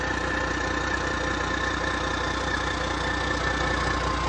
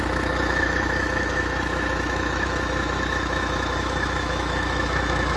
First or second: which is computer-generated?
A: second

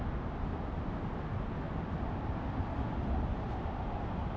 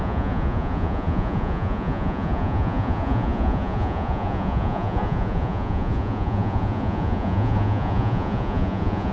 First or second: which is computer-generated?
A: second